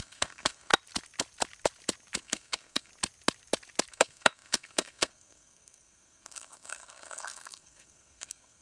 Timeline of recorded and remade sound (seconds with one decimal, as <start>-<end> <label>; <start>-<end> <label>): 0.0-0.7 remade; 0.7-2.2 recorded; 2.2-2.9 remade; 2.9-3.9 recorded; 3.9-8.6 remade